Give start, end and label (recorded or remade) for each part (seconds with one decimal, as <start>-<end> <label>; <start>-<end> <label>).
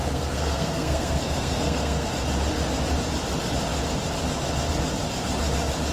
0.0-2.1 remade; 2.1-5.9 recorded